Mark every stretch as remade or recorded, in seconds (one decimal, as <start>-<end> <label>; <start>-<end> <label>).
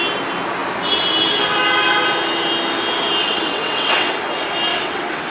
0.0-3.2 recorded; 3.2-4.2 remade; 4.2-4.7 recorded; 4.7-5.3 remade